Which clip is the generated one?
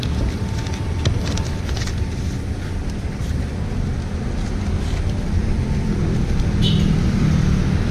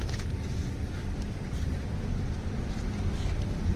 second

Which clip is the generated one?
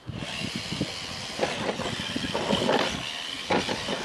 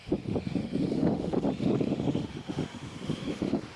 second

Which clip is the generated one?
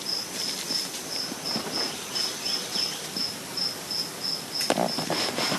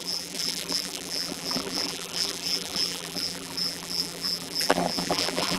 second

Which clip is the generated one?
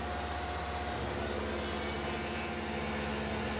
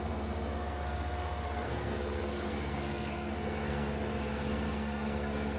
second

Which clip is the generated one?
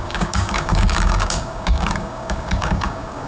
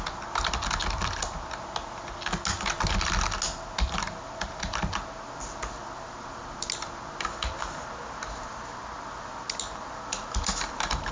first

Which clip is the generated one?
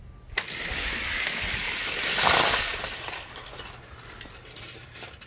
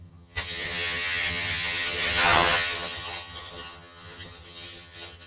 second